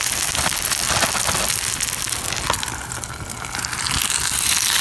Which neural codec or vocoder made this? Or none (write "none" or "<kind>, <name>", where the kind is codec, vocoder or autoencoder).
none